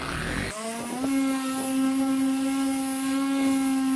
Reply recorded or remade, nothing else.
recorded